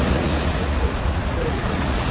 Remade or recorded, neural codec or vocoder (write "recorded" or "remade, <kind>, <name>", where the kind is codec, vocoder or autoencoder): remade, vocoder, Vocos